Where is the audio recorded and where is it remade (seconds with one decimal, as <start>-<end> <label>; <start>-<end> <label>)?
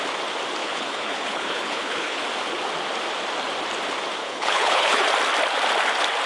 0.0-0.6 recorded; 0.6-2.2 remade; 2.2-4.2 recorded; 4.2-5.1 remade; 5.1-6.3 recorded